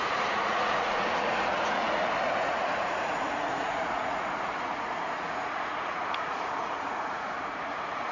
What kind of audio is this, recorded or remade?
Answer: remade